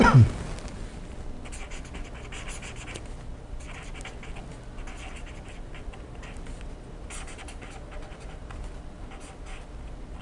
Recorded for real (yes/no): yes